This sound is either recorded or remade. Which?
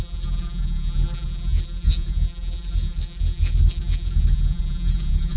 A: remade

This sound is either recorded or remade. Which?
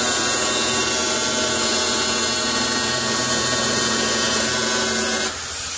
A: recorded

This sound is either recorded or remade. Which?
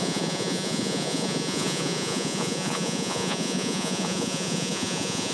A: remade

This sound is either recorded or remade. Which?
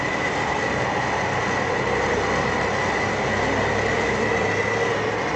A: recorded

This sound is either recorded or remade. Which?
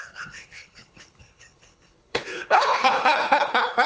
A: remade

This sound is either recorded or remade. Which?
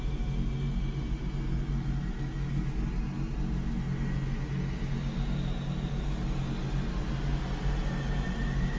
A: recorded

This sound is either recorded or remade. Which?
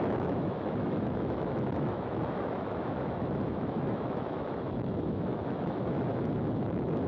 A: remade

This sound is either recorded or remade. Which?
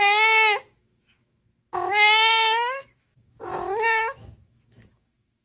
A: remade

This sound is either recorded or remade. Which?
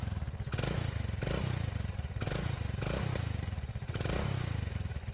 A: recorded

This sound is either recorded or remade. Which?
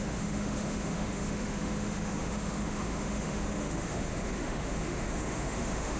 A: remade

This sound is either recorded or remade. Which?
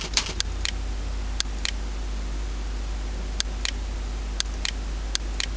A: recorded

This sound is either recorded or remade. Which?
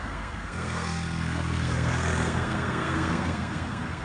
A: remade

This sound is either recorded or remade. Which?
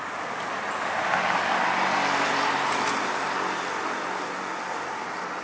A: recorded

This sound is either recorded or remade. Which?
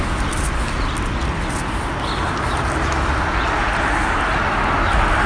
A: recorded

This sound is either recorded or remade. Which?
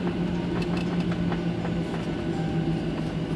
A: recorded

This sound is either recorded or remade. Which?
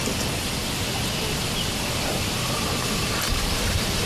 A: recorded